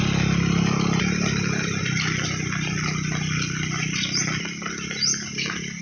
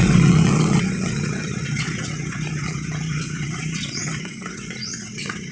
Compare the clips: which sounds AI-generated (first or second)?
second